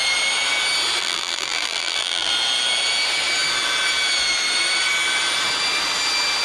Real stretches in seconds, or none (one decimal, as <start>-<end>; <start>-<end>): 0.0-1.0; 2.3-6.4